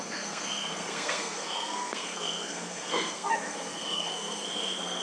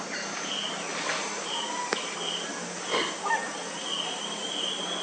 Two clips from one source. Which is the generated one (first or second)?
first